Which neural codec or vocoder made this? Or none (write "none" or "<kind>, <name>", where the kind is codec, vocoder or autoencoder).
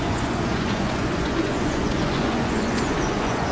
vocoder, Vocos